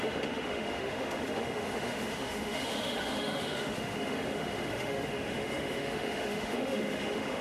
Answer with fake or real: fake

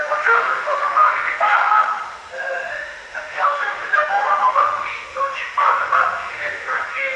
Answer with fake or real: fake